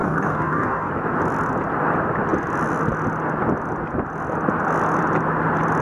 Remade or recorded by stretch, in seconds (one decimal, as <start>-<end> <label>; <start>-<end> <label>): 0.0-0.9 remade; 0.9-5.8 recorded